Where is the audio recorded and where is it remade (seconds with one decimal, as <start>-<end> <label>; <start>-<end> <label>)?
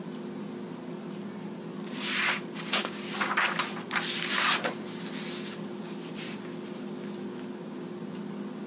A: 0.0-2.8 recorded; 2.8-3.3 remade; 3.3-8.7 recorded